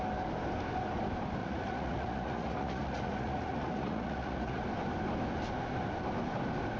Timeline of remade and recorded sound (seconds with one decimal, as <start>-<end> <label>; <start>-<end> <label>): 0.0-1.4 recorded; 1.4-4.6 remade; 4.6-6.8 recorded